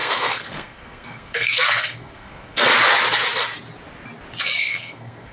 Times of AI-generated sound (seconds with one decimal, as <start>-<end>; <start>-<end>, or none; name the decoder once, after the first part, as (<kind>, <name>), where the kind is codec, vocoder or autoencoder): 0.0-2.7 (codec, SNAC); 4.6-5.3